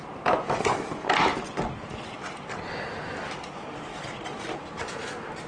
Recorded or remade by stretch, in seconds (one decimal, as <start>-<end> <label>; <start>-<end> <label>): 0.0-5.5 recorded